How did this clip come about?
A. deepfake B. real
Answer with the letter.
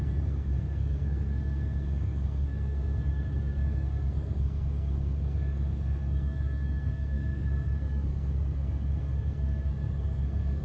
A